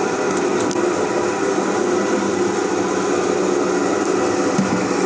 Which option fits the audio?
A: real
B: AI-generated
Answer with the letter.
A